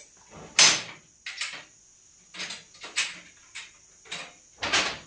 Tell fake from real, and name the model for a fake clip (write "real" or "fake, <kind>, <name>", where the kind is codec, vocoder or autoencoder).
real